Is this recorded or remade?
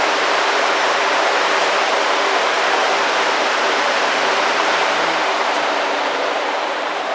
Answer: remade